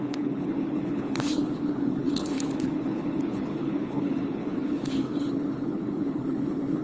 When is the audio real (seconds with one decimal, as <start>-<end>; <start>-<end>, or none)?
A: none